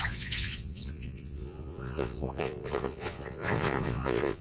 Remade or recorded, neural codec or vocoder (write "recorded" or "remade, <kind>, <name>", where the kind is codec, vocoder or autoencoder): remade, vocoder, Vocos